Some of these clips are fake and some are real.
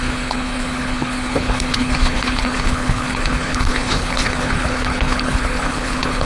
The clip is fake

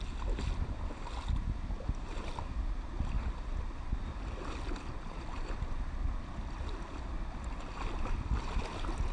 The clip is real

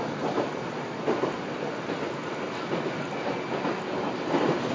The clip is real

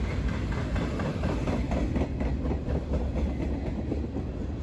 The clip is real